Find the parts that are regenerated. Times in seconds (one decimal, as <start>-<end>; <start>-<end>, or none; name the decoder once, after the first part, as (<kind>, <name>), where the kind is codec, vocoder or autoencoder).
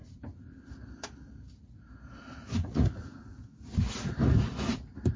2.6-3.3 (vocoder, Vocos)